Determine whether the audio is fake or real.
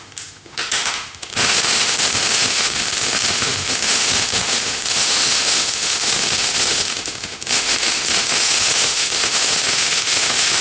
fake